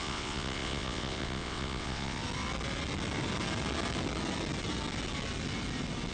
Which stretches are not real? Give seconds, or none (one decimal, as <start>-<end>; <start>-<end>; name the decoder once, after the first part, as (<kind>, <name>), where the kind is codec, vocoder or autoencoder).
0.0-2.2 (vocoder, WaveNeXt)